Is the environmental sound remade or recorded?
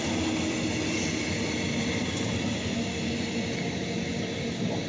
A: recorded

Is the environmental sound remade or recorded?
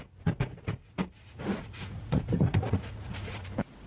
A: remade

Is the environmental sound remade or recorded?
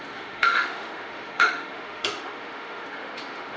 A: remade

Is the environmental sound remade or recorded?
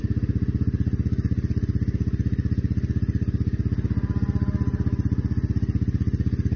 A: recorded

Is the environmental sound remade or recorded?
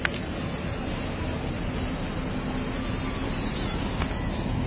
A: recorded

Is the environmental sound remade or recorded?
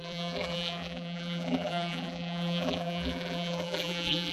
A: remade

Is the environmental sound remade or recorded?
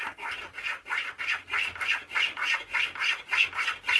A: recorded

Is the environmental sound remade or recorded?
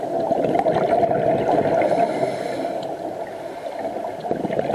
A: recorded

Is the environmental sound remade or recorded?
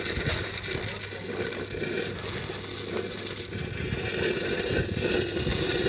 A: recorded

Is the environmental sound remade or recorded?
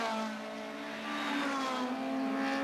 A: recorded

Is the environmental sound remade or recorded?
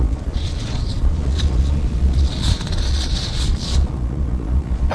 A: remade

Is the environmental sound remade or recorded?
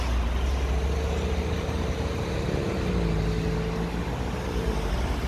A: recorded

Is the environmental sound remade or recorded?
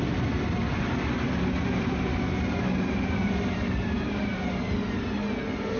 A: recorded